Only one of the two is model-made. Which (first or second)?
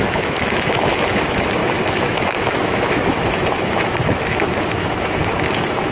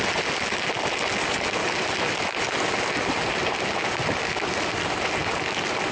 first